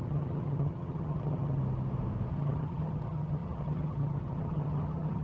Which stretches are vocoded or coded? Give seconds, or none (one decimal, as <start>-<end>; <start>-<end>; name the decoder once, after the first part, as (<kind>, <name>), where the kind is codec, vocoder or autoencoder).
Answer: 0.0-1.6 (vocoder, HiFi-GAN); 2.3-5.2